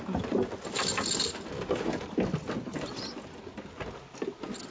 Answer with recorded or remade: recorded